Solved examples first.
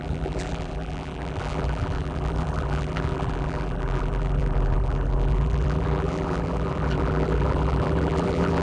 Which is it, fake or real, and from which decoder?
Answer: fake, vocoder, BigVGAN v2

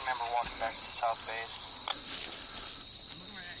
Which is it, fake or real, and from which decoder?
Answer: real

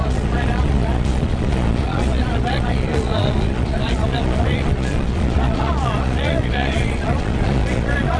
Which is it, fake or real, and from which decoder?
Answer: fake, vocoder, Vocos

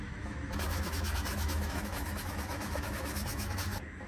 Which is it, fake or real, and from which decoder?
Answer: fake, autoencoder, DAC-VAE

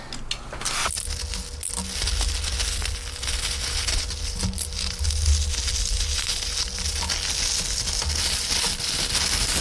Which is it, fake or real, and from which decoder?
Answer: real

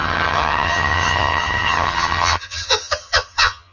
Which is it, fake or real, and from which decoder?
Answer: fake, vocoder, HiFi-GAN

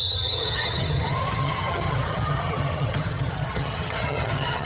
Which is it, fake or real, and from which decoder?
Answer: fake, vocoder, HiFi-GAN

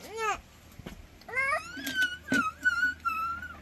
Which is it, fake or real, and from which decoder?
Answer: real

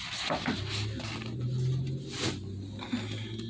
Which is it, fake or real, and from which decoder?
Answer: real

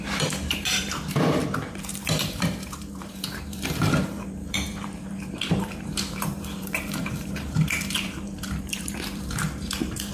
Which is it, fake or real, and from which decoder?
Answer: fake, vocoder, BigVGAN v2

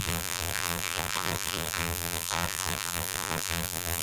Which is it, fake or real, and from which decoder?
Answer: fake, vocoder, BigVGAN v2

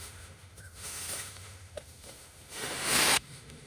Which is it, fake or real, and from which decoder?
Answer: fake, autoencoder, DAC-VAE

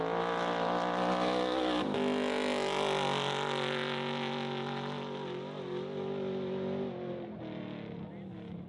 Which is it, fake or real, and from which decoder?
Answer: real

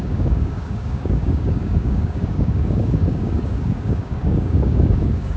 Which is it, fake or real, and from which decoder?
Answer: fake, codec, DAC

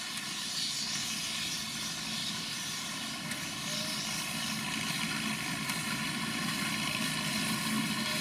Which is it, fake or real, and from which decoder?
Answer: real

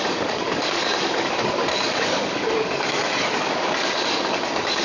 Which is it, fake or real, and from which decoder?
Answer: fake, codec, DAC